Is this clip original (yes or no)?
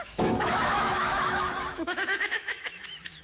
no